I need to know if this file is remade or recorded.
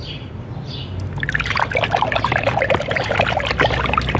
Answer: recorded